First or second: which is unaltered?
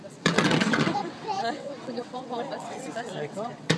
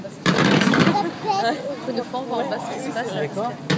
second